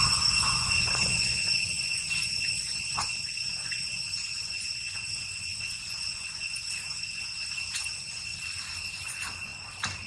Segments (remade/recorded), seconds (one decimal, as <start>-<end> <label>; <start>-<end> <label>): 0.0-8.3 remade; 8.3-8.9 recorded; 8.9-9.5 remade; 9.5-10.1 recorded